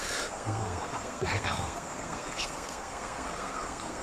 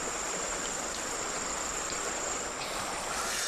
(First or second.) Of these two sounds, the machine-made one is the first